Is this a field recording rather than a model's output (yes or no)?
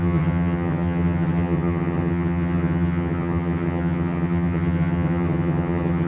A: no